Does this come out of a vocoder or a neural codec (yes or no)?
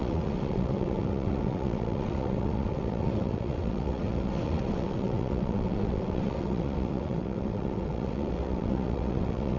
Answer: yes